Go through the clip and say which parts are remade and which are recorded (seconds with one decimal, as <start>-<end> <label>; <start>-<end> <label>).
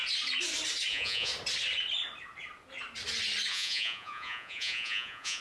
0.0-0.9 recorded; 0.9-1.3 remade; 1.3-3.5 recorded; 3.5-5.4 remade